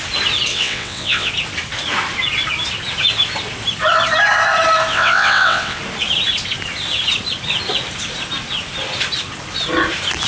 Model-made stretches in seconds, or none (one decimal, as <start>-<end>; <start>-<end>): 0.5-1.3; 4.9-5.8